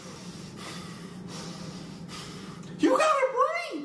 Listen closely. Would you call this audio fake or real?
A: real